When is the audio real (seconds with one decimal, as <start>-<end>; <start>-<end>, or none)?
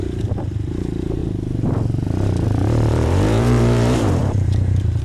1.2-2.9